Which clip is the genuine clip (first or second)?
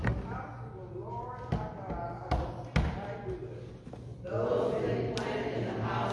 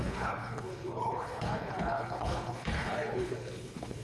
first